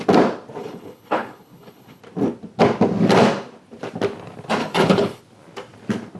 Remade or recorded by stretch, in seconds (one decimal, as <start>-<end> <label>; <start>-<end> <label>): 0.0-0.6 recorded; 0.6-2.0 remade; 2.0-4.6 recorded; 4.6-5.2 remade; 5.2-6.2 recorded